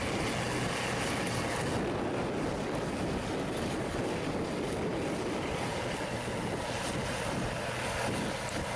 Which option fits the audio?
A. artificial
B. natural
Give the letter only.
B